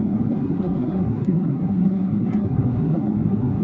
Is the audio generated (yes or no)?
yes